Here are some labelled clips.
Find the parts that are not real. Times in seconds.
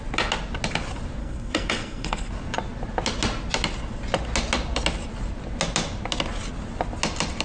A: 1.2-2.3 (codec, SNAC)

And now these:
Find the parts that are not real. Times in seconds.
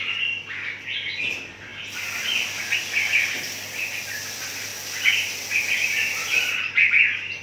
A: none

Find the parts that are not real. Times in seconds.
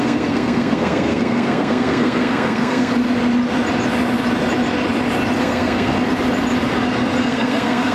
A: 0.0-2.9 (codec, SNAC); 5.4-5.9; 7.2-7.9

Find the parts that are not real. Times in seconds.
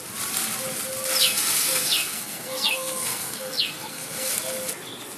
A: 1.2-4.3 (codec, SNAC)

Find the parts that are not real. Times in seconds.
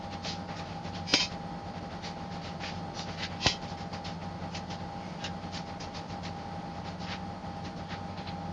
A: none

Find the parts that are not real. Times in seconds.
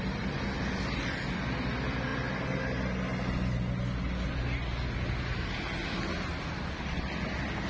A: none